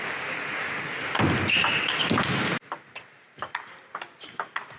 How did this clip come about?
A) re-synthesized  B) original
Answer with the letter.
B